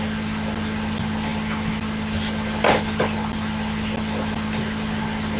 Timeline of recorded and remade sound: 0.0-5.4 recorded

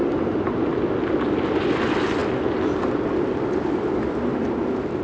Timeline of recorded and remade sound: 0.0-5.0 recorded

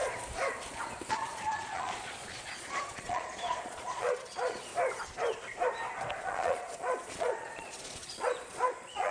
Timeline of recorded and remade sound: 0.0-1.1 recorded; 1.1-4.7 remade; 4.7-6.2 recorded; 6.2-9.1 remade